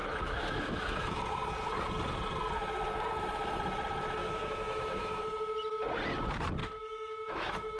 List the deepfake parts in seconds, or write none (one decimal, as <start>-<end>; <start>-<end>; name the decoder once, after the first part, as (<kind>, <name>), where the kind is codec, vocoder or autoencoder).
0.0-1.2 (autoencoder, DAC-VAE); 4.2-5.2; 6.6-7.8